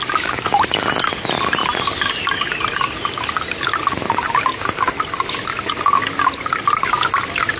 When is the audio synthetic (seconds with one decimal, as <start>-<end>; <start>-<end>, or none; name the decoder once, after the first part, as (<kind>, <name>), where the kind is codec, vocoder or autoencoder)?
none